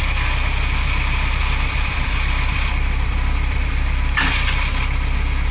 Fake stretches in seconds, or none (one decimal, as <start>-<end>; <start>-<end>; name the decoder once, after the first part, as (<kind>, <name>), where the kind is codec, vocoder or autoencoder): 1.4-4.7 (vocoder, BigVGAN v2)